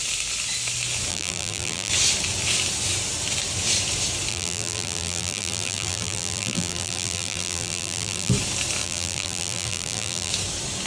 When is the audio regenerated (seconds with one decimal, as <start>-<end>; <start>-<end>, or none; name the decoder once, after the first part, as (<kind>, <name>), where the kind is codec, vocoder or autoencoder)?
1.1-1.9 (vocoder, BigVGAN v2); 4.3-8.3; 8.8-10.3